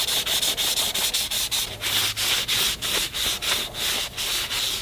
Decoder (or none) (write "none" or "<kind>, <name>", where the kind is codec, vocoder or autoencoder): none